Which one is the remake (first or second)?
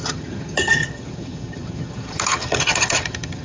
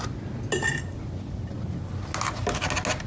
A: first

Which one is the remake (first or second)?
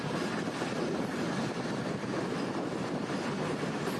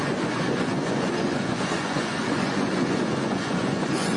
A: second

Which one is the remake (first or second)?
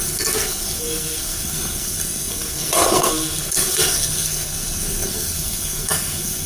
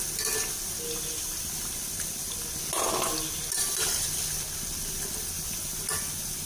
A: first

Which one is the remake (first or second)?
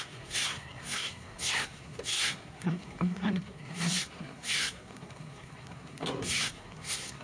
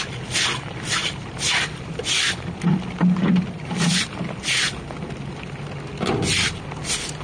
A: first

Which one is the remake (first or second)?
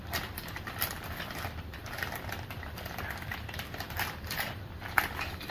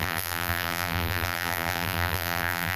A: second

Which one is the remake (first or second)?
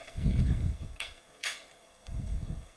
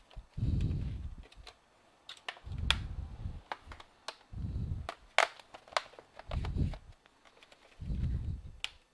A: first